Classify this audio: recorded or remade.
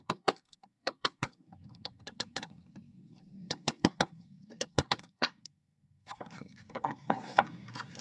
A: remade